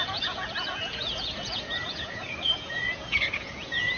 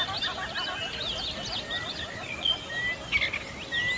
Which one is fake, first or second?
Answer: first